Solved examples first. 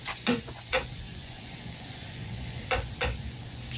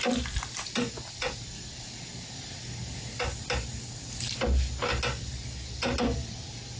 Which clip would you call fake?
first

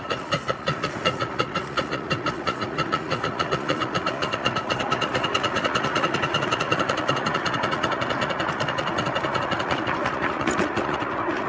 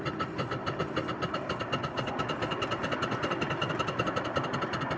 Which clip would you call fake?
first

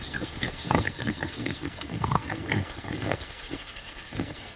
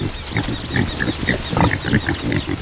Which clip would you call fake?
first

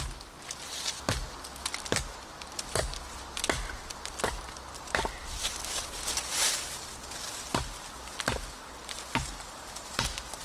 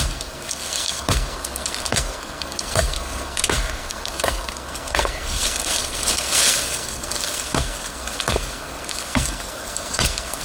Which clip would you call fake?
second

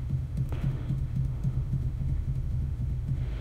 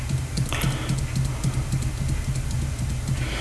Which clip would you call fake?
first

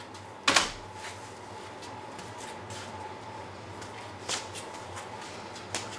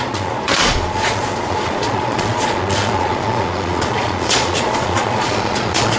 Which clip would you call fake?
second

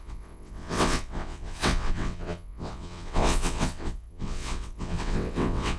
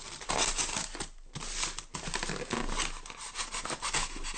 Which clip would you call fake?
first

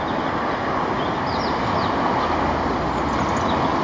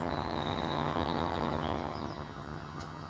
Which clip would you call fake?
second